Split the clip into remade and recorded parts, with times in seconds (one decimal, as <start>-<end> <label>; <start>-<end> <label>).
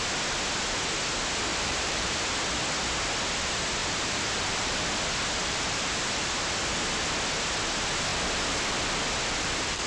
0.0-1.5 recorded; 1.5-2.1 remade; 2.1-3.8 recorded; 3.8-4.7 remade; 4.7-5.4 recorded; 5.4-6.3 remade; 6.3-9.9 recorded